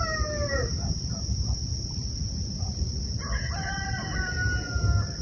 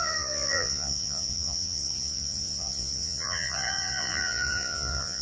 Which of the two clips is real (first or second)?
first